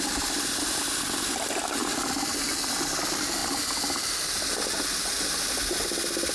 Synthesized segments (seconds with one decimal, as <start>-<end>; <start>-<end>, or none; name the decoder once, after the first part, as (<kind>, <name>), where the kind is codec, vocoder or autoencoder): none